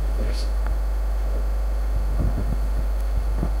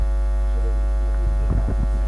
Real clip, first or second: second